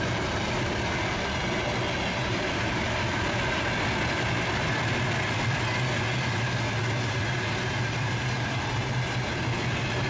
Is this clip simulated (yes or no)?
no